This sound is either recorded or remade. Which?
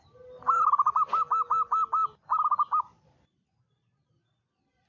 recorded